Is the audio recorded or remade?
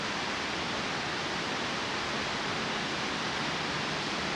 recorded